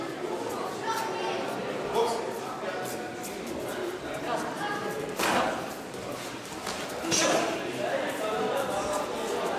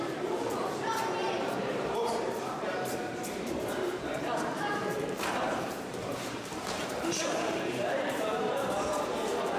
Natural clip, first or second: first